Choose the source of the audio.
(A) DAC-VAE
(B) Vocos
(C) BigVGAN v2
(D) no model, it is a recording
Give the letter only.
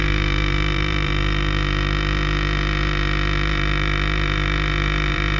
C